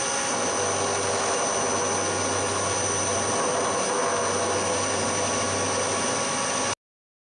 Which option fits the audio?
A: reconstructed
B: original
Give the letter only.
B